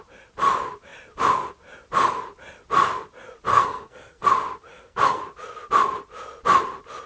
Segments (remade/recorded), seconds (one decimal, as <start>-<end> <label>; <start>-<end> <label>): 0.0-3.5 recorded; 3.5-4.3 remade; 4.3-4.7 recorded; 4.7-5.2 remade; 5.2-7.1 recorded